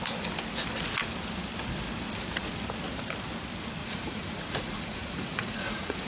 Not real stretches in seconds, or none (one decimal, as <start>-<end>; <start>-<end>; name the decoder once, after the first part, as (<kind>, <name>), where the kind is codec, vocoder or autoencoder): 3.8-6.1 (vocoder, Vocos)